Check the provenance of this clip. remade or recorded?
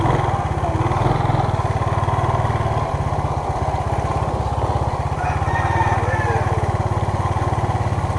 recorded